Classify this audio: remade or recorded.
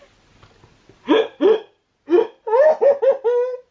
recorded